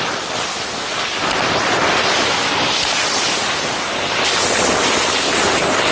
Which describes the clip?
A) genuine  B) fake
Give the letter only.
A